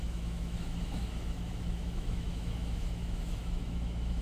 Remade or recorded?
remade